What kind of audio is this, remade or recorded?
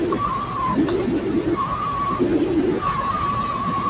recorded